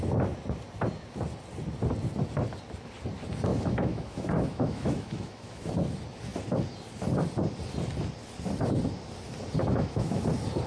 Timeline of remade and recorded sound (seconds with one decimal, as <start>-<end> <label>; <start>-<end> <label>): 0.0-3.5 recorded; 3.5-5.7 remade; 5.7-9.6 recorded; 9.6-10.2 remade; 10.2-10.7 recorded